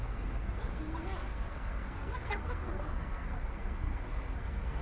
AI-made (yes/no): yes